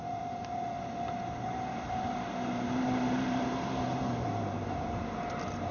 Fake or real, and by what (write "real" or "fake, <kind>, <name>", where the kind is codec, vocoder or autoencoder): fake, vocoder, BigVGAN v2